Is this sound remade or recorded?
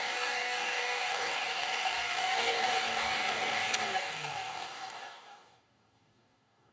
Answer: remade